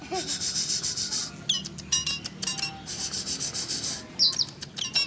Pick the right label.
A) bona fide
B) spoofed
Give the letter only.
A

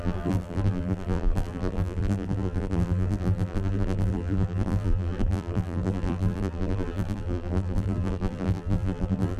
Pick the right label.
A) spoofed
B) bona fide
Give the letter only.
A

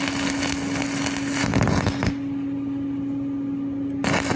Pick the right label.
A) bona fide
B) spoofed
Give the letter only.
A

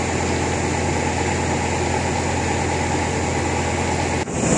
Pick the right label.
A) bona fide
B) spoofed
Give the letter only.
A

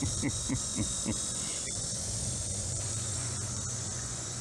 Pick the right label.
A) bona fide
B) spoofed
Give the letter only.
B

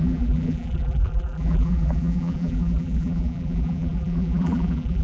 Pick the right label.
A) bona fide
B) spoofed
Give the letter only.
B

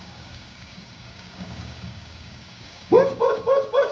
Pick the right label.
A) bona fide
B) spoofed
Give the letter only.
B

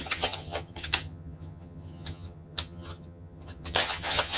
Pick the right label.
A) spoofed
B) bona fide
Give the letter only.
A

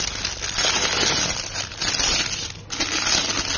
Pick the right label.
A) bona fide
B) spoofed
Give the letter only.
A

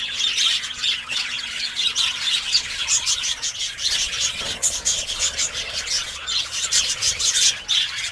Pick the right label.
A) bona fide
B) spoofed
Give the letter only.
B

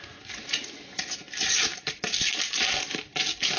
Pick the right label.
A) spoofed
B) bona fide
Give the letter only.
B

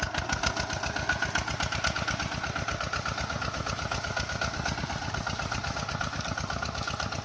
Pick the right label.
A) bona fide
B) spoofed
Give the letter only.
A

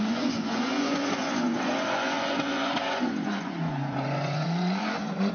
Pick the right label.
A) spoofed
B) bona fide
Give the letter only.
A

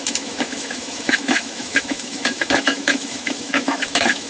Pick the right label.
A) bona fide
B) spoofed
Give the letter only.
B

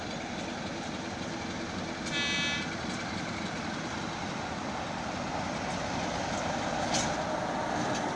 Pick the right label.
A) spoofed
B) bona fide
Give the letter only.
B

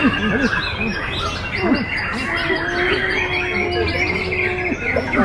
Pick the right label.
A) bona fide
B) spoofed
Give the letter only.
A